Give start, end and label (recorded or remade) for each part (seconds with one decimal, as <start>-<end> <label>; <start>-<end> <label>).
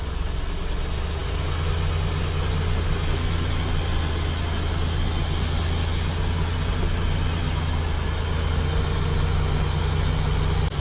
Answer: 0.0-10.8 recorded